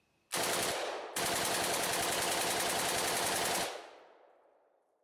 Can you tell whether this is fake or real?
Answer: real